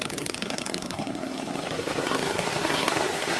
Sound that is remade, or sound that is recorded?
remade